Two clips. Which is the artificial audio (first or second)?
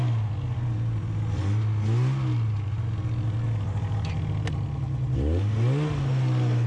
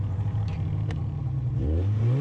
second